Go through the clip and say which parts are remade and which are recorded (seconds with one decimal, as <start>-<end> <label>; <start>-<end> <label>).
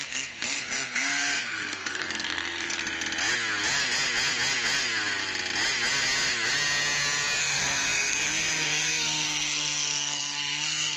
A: 0.0-2.8 remade; 2.8-7.4 recorded; 7.4-11.0 remade